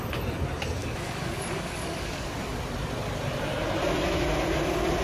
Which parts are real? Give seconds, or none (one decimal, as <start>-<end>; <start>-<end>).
0.0-0.8; 2.6-5.0